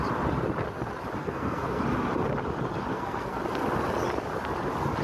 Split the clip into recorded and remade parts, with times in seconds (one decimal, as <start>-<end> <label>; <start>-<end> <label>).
0.0-1.2 recorded; 1.2-1.8 remade; 1.8-2.9 recorded; 2.9-3.4 remade; 3.4-5.0 recorded